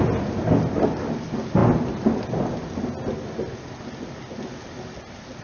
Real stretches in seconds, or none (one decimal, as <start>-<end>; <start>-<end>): 0.0-5.4